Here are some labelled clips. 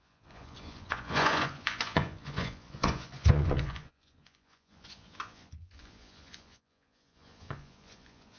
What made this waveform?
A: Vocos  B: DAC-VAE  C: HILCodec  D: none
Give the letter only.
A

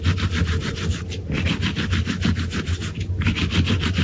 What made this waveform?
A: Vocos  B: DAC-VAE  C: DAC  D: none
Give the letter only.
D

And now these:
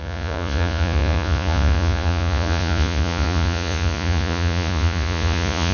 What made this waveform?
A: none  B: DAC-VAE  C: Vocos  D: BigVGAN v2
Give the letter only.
C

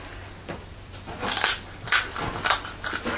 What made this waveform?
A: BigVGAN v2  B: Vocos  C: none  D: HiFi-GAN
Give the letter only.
C